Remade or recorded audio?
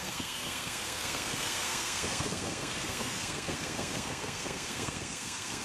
remade